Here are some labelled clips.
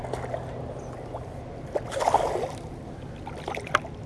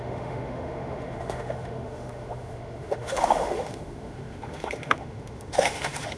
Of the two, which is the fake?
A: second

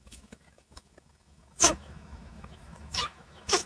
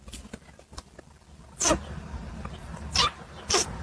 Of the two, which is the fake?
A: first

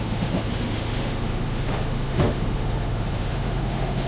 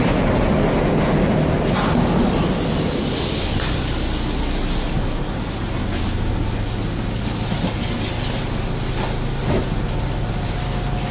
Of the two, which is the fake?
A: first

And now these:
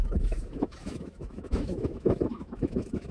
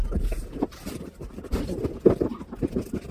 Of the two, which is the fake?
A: first